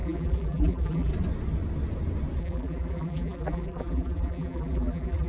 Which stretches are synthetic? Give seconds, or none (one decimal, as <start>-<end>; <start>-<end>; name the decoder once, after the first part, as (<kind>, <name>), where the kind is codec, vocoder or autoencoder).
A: 0.0-1.1 (vocoder, BigVGAN v2); 2.4-5.3